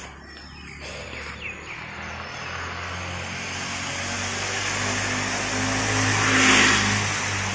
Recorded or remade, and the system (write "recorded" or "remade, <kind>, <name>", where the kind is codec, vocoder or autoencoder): recorded